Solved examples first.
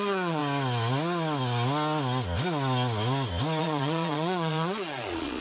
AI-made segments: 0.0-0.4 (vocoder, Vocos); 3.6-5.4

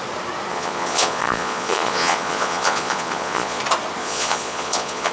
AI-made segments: 0.5-3.6 (vocoder, Vocos); 4.0-5.1

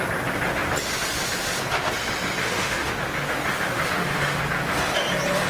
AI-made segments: 2.4-2.9 (autoencoder, DAC-VAE); 3.5-4.4